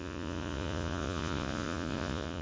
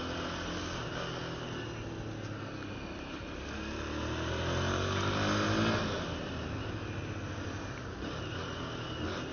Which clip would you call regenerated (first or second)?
first